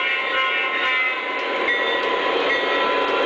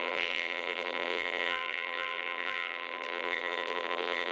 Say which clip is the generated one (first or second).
second